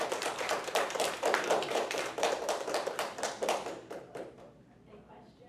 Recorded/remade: remade